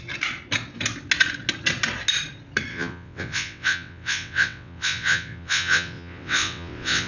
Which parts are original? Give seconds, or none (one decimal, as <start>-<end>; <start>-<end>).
0.0-2.7